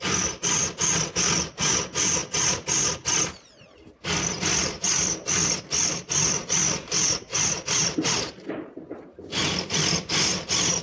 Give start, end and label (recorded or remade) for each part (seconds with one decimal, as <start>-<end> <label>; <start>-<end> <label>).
0.0-10.8 recorded